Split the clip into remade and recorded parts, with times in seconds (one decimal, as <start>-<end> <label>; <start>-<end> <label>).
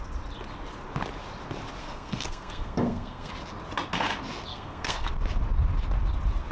0.0-1.8 recorded; 1.8-3.3 remade; 3.3-4.5 recorded; 4.5-5.1 remade; 5.1-6.5 recorded